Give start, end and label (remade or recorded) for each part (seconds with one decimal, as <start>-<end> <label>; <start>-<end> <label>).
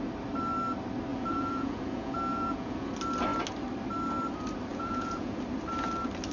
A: 0.0-1.1 recorded; 1.1-2.9 remade; 2.9-4.7 recorded; 4.7-5.4 remade; 5.4-6.3 recorded